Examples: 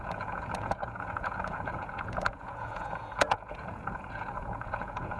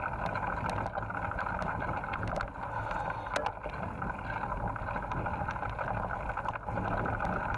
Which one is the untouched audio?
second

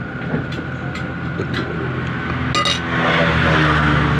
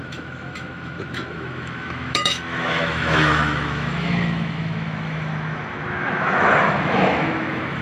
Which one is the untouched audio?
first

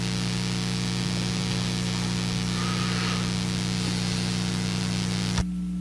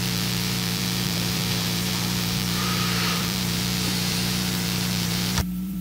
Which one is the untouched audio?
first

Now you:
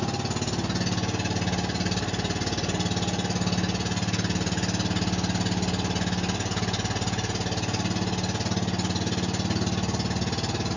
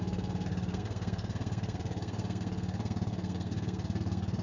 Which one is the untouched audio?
first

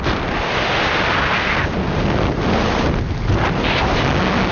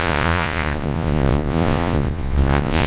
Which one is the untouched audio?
first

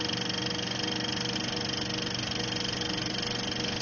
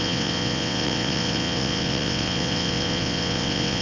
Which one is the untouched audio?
first